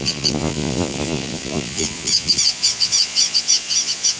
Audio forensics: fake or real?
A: fake